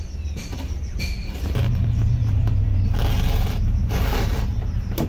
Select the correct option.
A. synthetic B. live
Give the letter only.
A